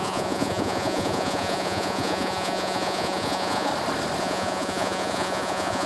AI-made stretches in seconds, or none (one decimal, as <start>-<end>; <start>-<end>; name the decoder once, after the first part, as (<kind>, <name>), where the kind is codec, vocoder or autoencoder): 0.0-3.7 (vocoder, Vocos); 4.2-5.9